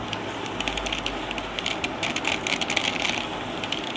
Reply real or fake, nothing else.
real